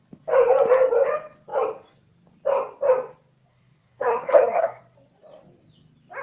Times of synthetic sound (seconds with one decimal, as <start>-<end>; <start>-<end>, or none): 3.5-4.8